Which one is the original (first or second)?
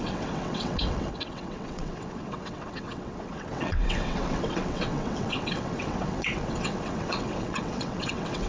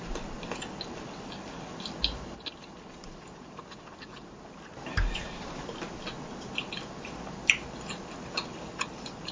second